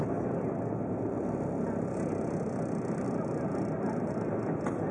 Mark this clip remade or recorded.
recorded